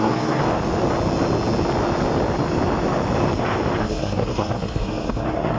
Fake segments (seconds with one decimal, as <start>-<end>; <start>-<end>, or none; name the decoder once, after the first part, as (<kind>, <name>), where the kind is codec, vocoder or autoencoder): 0.0-0.4 (codec, SNAC); 3.8-5.6